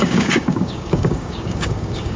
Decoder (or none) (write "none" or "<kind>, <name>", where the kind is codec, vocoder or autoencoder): codec, DAC